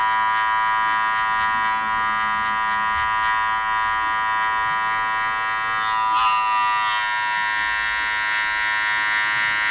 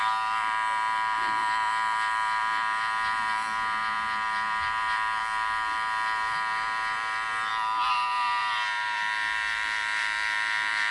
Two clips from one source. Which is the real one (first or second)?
first